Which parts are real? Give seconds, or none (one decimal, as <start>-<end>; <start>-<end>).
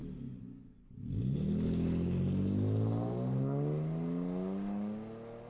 0.0-5.5